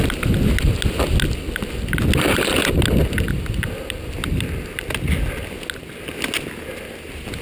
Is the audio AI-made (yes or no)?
no